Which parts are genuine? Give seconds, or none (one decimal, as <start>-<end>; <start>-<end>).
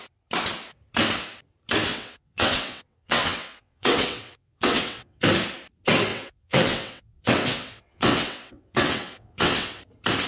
0.0-1.9; 5.2-6.1; 9.8-10.3